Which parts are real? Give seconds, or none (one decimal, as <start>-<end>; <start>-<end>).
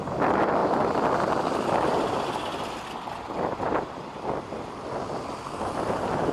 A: 0.0-6.3